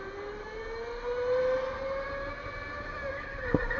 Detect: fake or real real